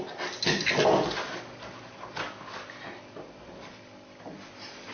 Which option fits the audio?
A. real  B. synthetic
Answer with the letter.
A